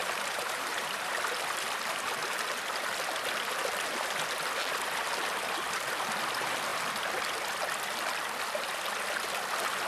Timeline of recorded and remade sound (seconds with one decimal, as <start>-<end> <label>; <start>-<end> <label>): 0.0-1.1 remade; 1.1-9.9 recorded